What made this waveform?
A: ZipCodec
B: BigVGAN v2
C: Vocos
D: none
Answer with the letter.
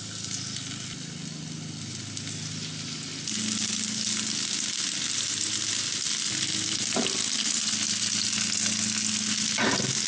D